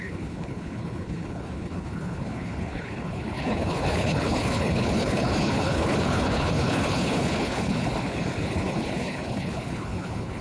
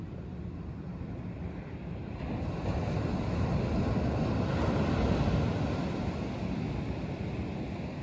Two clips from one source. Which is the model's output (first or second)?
first